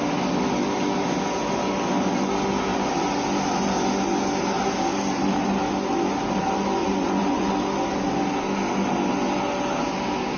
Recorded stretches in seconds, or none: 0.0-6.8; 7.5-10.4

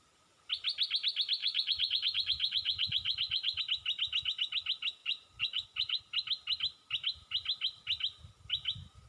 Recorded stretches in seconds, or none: 0.0-1.4; 3.6-5.0; 6.0-9.1

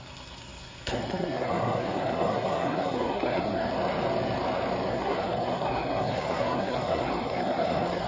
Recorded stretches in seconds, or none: 3.7-4.9